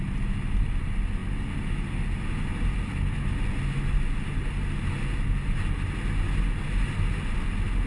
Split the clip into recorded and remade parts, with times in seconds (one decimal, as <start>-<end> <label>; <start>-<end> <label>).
0.0-7.9 recorded